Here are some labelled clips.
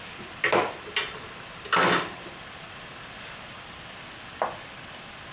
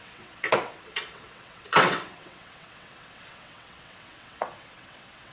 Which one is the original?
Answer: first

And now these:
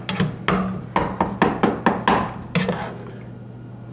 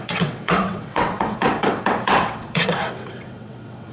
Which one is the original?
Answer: first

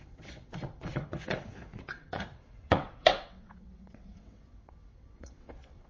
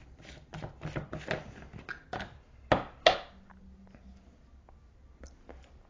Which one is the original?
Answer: second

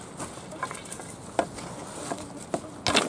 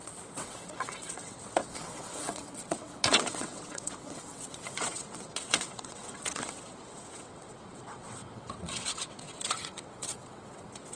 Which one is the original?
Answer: first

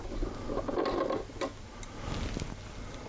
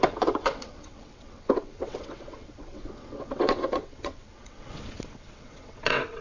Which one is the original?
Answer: first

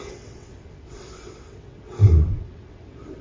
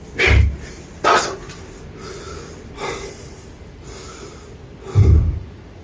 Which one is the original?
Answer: second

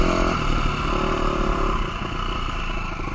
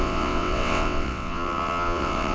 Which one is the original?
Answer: first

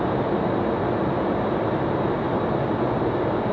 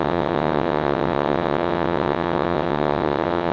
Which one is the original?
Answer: first